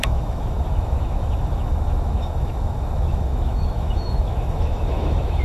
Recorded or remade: remade